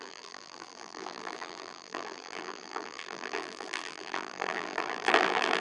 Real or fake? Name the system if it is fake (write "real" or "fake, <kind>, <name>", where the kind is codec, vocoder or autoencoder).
fake, vocoder, BigVGAN v2